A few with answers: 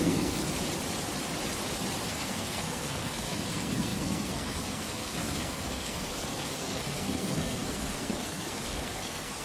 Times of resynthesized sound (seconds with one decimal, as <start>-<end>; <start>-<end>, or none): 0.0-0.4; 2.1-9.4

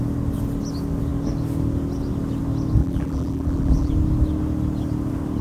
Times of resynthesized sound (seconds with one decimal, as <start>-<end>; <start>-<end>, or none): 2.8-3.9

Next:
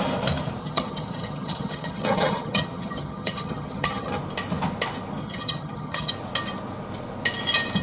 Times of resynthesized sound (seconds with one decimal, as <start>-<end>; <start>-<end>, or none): 0.6-4.1; 5.2-6.1

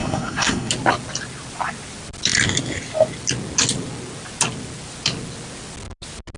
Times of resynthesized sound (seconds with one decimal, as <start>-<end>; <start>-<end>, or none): 0.0-0.7

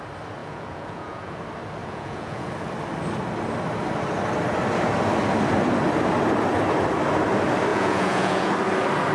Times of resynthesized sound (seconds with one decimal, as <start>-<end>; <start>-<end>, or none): 0.4-1.4; 1.8-2.5; 7.7-8.5

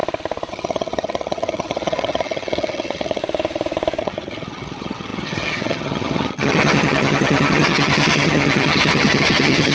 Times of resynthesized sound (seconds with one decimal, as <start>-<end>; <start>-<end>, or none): 0.5-3.2; 4.0-9.7

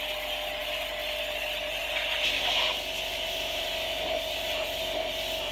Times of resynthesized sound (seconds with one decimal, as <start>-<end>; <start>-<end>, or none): 3.1-4.8